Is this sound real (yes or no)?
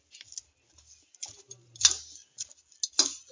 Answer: yes